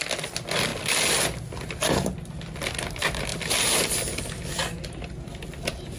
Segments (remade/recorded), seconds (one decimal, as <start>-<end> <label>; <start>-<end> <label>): 0.0-6.0 recorded